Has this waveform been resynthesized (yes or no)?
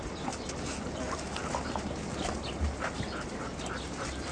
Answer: no